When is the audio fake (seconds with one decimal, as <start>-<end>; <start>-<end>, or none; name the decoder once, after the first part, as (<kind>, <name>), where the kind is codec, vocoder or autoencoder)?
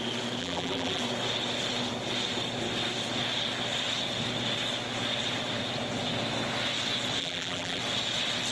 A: 0.4-1.0 (vocoder, BigVGAN v2); 7.2-7.8